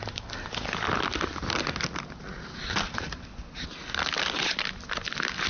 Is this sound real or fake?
real